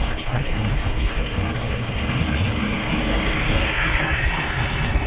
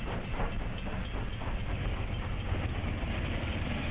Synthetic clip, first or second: first